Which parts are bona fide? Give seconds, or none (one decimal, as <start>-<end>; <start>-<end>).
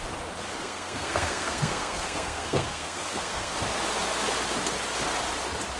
0.0-0.5; 3.5-5.8